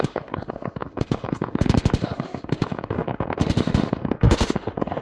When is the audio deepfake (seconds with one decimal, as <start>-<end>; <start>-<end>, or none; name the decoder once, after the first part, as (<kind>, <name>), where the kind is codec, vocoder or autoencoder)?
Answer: 0.0-5.0 (autoencoder, DAC-VAE)